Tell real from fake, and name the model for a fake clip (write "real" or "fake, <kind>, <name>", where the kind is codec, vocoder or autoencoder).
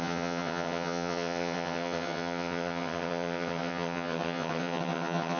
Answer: fake, vocoder, HiFi-GAN